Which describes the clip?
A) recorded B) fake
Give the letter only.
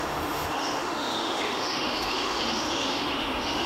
B